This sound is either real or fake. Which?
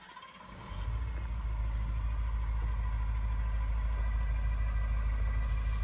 real